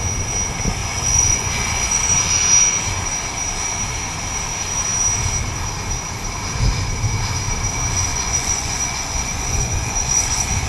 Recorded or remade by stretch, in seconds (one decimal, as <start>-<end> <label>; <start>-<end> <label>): 0.0-0.8 recorded; 0.8-1.9 remade; 1.9-8.1 recorded; 8.1-10.7 remade